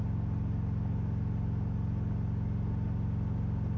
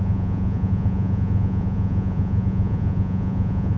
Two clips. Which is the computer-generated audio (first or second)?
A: second